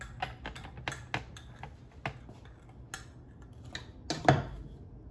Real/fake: real